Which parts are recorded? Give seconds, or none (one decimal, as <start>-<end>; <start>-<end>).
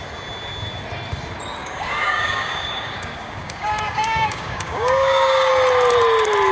0.0-1.6; 5.5-6.5